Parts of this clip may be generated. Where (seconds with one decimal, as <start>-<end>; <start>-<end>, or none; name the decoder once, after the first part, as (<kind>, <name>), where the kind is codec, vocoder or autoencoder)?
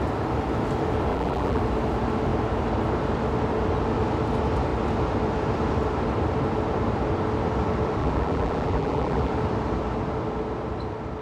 1.1-1.6 (vocoder, BigVGAN v2); 8.0-9.3